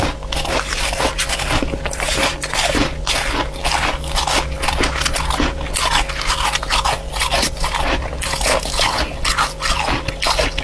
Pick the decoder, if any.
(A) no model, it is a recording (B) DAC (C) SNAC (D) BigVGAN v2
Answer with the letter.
A